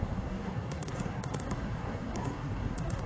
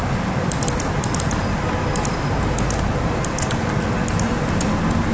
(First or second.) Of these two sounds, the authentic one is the second